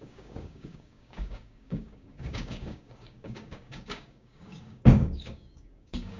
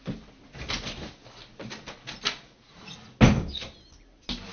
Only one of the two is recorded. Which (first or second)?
second